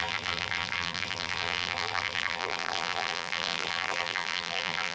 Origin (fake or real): fake